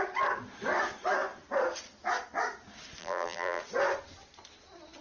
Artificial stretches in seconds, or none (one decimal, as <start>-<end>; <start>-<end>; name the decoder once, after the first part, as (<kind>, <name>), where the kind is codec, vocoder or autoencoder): 3.0-3.6 (vocoder, BigVGAN v2)